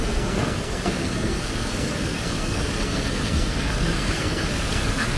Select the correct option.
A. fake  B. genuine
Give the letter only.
A